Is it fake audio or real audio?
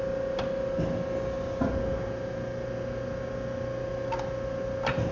real